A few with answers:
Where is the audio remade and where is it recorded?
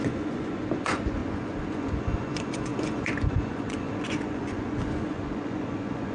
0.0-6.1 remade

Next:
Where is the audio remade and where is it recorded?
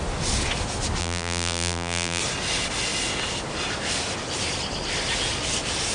0.0-1.0 recorded; 1.0-2.2 remade; 2.2-5.9 recorded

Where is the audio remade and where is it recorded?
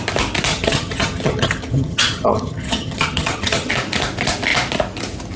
0.0-0.5 recorded; 0.5-3.7 remade; 3.7-5.4 recorded